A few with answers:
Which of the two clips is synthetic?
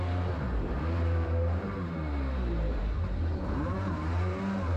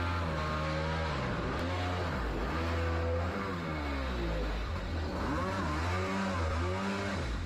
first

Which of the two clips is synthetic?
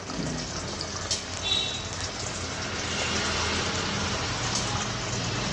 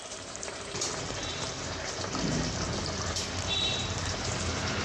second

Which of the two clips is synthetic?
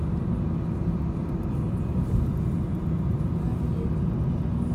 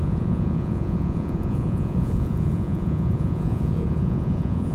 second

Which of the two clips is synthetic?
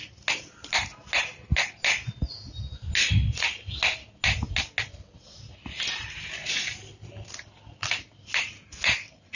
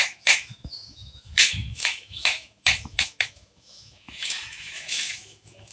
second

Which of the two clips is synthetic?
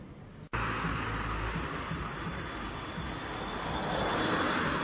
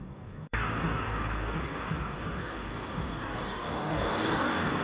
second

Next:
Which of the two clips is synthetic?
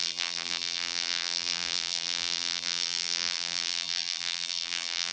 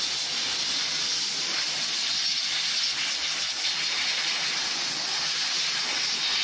first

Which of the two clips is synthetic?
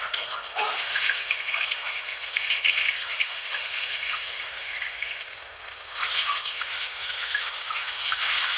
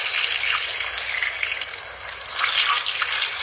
first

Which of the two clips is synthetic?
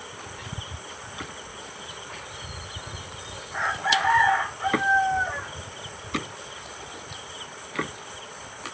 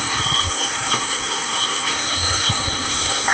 second